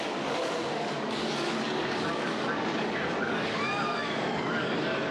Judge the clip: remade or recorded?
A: remade